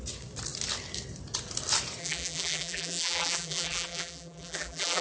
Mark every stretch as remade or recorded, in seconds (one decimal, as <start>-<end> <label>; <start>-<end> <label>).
0.0-2.0 recorded; 2.0-5.0 remade